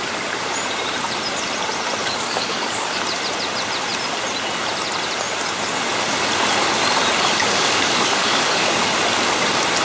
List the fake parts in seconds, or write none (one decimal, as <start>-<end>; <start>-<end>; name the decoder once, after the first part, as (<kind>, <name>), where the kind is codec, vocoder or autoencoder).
2.0-3.0 (codec, DAC); 7.4-8.8